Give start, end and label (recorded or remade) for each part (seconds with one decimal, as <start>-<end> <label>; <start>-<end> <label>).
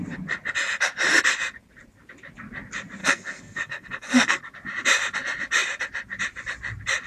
0.0-3.0 recorded; 3.0-4.4 remade; 4.4-7.1 recorded